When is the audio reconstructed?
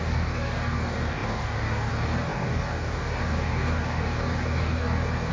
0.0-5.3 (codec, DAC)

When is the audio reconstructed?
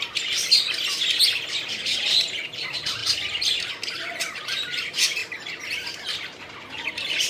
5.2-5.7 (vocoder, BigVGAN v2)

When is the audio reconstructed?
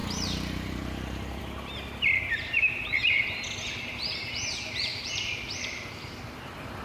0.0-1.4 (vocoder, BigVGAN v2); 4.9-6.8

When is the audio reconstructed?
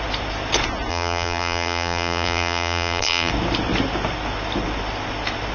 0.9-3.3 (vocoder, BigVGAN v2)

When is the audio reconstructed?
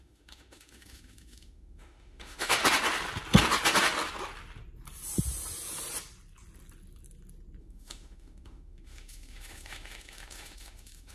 0.0-2.6 (autoencoder, DAC-VAE); 7.6-11.1